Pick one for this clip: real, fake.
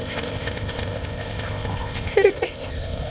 fake